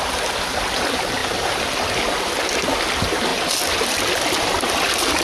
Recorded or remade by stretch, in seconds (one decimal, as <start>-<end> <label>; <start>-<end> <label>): 0.0-5.2 recorded

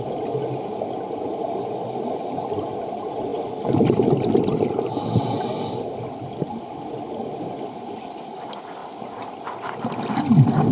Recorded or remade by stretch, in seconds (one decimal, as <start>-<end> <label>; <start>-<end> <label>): 0.0-10.7 recorded